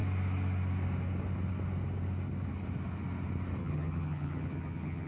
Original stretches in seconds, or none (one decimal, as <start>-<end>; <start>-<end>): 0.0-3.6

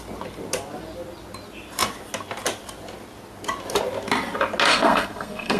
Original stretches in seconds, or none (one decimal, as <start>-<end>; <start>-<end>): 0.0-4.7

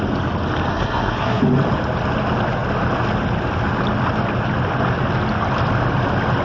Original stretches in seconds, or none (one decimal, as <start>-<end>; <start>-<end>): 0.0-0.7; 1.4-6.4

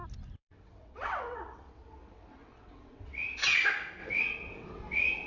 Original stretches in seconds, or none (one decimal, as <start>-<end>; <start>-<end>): 0.0-0.4; 3.6-4.0

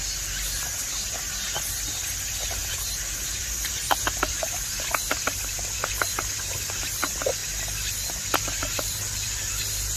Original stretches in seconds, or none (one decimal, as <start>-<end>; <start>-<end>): 7.4-8.4